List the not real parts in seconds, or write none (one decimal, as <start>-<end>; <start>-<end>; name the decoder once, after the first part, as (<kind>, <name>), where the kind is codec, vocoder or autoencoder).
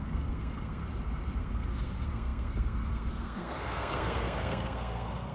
0.0-0.8 (codec, SNAC); 1.4-5.3